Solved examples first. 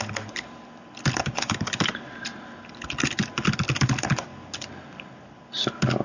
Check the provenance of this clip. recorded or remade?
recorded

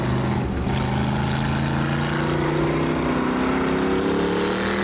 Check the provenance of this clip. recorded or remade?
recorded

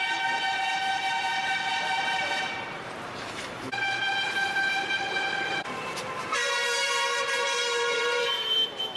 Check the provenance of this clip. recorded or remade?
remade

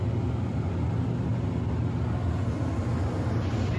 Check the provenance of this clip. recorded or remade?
recorded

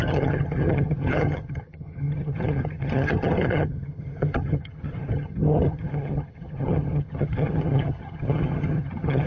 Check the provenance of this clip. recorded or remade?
remade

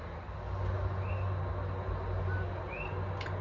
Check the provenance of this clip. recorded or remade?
recorded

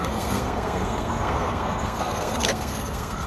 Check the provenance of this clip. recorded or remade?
remade